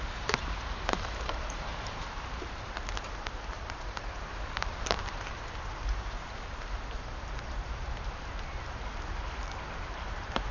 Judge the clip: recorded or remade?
remade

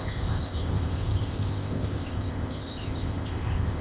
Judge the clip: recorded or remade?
remade